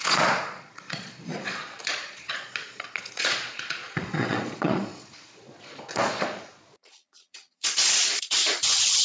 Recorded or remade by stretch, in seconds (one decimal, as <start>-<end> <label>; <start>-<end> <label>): 0.0-9.0 remade